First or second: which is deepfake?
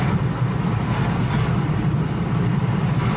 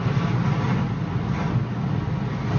first